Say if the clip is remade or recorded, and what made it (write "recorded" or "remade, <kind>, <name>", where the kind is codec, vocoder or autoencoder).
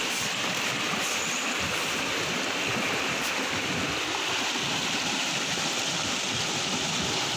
recorded